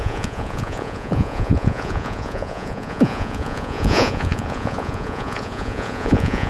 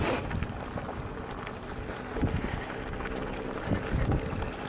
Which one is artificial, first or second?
first